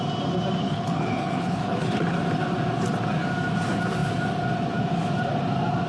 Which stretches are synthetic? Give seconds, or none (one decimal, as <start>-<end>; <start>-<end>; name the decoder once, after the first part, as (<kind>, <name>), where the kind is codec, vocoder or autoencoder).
0.6-1.9 (codec, HILCodec)